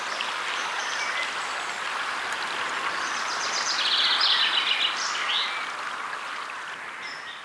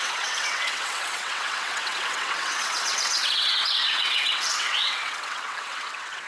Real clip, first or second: first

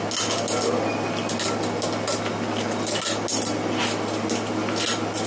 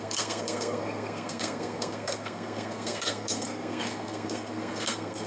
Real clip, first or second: first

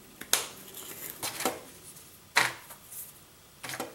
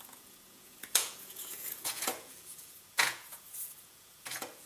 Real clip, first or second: first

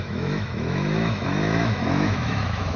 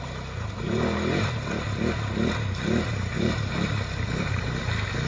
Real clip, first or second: second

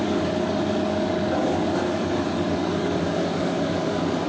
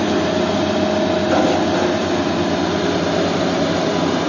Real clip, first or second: second